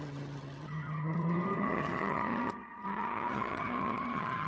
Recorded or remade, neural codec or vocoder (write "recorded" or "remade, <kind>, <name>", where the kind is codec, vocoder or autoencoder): remade, vocoder, HiFi-GAN